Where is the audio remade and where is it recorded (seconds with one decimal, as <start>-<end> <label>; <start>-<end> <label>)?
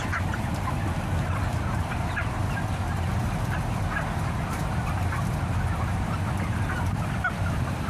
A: 0.0-7.9 recorded